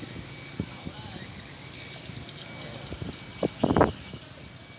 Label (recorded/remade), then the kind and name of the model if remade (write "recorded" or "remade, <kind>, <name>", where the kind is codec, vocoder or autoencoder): recorded